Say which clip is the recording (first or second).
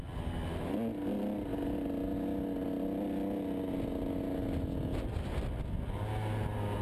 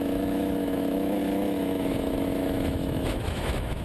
first